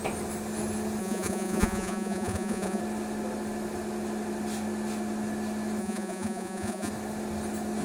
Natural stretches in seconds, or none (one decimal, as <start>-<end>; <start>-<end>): 0.0-1.0; 2.8-5.8; 6.9-7.8